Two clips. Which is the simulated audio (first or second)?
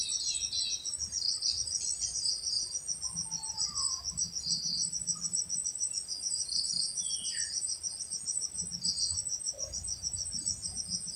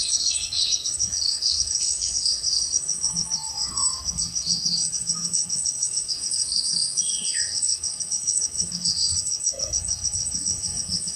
second